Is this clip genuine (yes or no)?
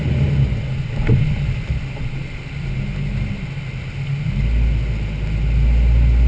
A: yes